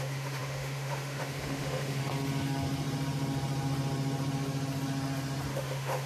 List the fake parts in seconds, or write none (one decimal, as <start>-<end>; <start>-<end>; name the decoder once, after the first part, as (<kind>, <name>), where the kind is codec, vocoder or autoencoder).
0.0-2.0 (autoencoder, DAC-VAE); 5.5-6.1